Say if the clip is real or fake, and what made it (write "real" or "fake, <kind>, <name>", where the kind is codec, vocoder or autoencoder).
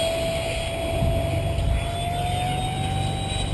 real